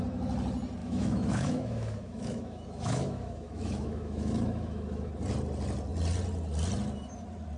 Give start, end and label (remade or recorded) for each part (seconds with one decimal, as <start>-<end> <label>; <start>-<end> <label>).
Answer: 0.0-0.8 recorded; 0.8-5.1 remade; 5.1-7.6 recorded